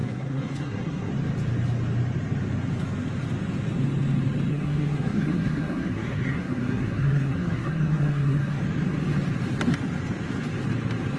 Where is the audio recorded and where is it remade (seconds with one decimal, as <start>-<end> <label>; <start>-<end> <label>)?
0.0-1.1 remade; 1.1-4.5 recorded; 4.5-8.6 remade; 8.6-11.2 recorded